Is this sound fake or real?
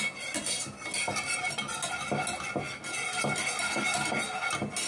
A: real